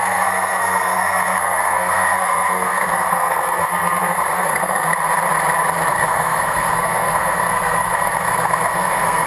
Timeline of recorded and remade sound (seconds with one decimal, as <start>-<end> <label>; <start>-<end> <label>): 0.0-4.9 remade; 4.9-5.9 recorded; 5.9-9.3 remade